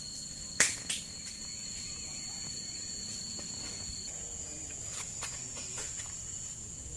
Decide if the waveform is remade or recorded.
remade